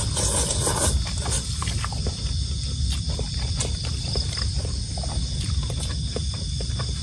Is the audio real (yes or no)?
yes